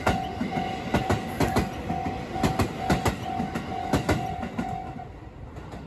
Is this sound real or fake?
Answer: real